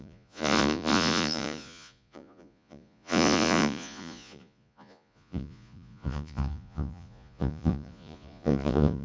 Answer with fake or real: fake